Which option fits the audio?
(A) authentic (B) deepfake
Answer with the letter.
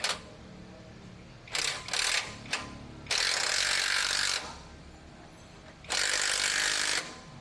A